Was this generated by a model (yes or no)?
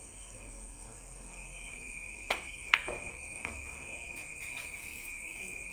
yes